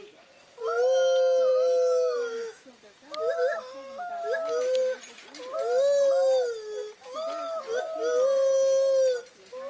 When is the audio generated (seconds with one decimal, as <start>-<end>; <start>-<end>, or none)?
1.5-2.7; 3.4-4.1

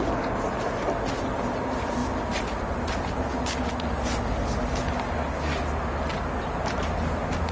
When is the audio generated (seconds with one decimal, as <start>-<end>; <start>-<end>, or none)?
none

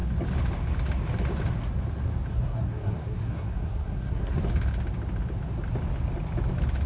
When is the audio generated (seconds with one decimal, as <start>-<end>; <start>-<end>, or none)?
2.3-4.4

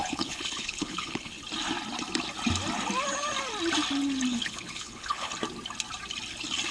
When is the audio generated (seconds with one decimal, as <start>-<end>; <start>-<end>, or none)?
0.0-1.4; 4.3-5.3

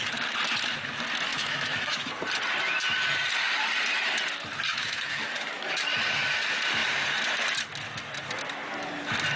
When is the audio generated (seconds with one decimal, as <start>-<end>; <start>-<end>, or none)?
1.3-2.1; 4.7-5.7

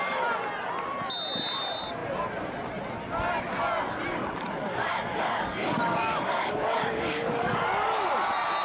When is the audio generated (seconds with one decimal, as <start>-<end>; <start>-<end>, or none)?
4.1-8.1